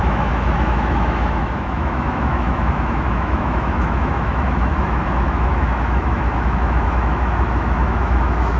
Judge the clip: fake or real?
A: fake